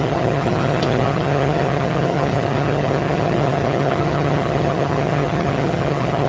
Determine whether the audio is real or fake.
fake